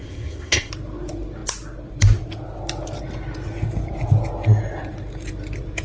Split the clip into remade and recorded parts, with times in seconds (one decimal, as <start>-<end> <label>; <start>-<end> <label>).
0.0-0.7 remade; 0.7-5.8 recorded

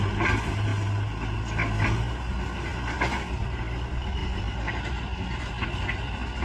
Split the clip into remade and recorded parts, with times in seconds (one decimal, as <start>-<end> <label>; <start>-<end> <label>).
0.0-6.4 recorded

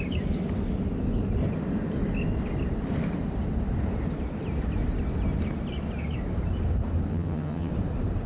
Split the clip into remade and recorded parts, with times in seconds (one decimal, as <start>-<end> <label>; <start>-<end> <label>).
0.0-7.1 recorded; 7.1-7.7 remade; 7.7-8.3 recorded

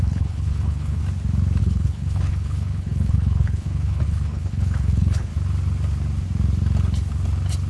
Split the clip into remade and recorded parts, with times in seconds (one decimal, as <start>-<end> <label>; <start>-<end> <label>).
0.0-1.0 remade; 1.0-1.6 recorded; 1.6-5.3 remade; 5.3-7.7 recorded

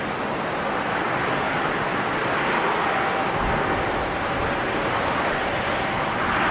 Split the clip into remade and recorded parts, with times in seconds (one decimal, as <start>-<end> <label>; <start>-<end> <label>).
0.0-6.5 recorded

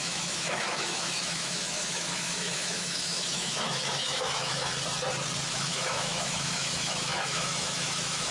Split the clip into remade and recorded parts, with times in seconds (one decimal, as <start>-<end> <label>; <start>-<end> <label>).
0.0-4.7 remade; 4.7-5.5 recorded; 5.5-8.3 remade

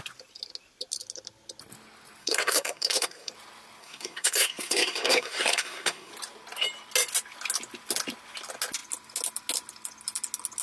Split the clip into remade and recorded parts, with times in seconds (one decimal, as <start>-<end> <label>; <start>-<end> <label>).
0.0-2.2 recorded; 2.2-3.3 remade; 3.3-3.8 recorded; 3.8-6.1 remade; 6.1-10.6 recorded

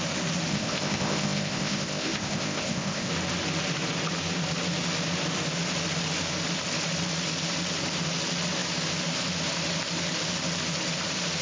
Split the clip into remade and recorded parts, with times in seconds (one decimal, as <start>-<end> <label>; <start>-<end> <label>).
0.0-0.5 recorded; 0.5-3.1 remade; 3.1-11.4 recorded